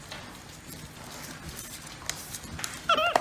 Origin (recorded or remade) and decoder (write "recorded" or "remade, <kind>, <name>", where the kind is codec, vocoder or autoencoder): recorded